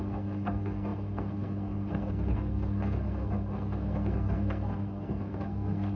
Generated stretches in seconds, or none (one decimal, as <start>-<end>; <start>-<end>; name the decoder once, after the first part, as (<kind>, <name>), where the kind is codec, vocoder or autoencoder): 0.0-6.0 (codec, SNAC)